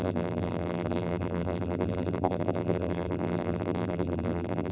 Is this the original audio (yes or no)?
no